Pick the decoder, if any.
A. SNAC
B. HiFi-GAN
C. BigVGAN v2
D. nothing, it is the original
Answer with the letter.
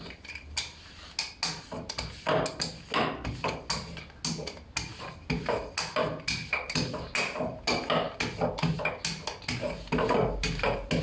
D